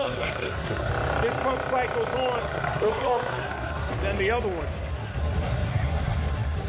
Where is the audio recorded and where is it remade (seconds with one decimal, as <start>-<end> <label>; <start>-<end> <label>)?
0.0-0.9 remade; 0.9-2.4 recorded; 2.4-3.9 remade; 3.9-4.9 recorded; 4.9-6.7 remade